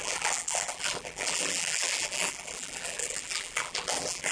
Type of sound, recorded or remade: remade